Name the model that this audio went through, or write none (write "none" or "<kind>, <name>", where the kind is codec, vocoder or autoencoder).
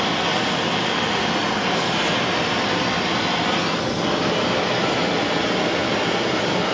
none